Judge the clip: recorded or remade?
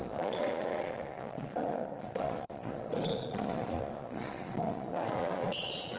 remade